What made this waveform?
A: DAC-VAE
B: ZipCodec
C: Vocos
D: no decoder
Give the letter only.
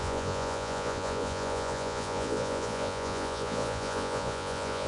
C